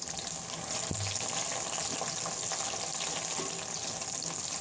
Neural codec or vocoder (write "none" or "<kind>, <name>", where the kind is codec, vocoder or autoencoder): none